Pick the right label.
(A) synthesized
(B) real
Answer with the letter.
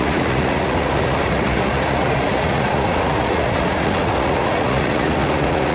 A